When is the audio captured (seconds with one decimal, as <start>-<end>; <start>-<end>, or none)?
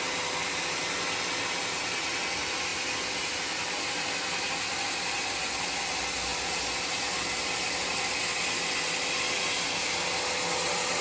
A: 0.0-11.0